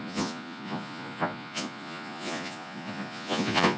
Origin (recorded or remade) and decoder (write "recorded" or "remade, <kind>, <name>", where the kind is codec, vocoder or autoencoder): remade, vocoder, Vocos